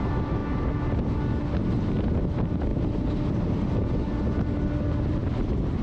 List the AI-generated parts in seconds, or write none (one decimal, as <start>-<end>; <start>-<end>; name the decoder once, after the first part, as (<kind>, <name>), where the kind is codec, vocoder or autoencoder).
none